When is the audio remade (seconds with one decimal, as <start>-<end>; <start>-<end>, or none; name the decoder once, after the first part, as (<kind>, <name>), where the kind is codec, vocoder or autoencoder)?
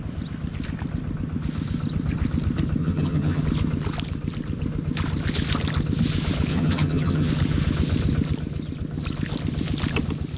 2.8-3.4 (vocoder, HiFi-GAN); 6.5-7.3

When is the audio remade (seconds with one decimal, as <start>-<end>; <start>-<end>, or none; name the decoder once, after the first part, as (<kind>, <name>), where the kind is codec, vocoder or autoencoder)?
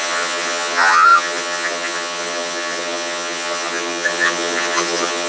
0.0-5.3 (vocoder, HiFi-GAN)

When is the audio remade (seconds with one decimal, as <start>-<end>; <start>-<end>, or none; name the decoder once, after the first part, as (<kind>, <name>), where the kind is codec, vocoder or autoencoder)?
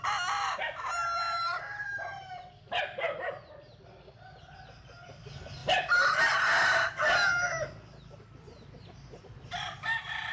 none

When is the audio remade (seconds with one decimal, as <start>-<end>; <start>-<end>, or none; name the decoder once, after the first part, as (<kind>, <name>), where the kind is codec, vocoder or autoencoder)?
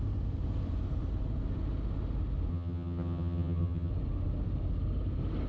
2.5-3.9 (vocoder, HiFi-GAN)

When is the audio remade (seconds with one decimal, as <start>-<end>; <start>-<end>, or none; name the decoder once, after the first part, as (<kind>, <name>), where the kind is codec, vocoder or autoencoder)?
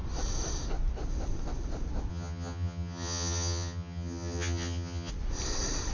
2.1-5.1 (vocoder, HiFi-GAN)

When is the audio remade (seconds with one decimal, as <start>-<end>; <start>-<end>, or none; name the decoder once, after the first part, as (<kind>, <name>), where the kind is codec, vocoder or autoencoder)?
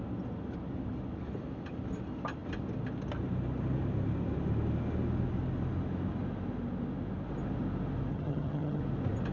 8.1-8.8 (vocoder, HiFi-GAN)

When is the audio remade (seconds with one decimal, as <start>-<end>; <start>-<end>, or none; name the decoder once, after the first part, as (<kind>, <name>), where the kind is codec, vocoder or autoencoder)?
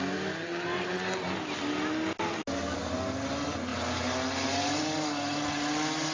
none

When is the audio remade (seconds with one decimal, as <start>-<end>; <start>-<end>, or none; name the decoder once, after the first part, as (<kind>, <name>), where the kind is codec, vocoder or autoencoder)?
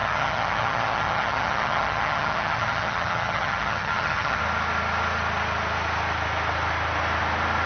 0.0-4.4 (vocoder, HiFi-GAN)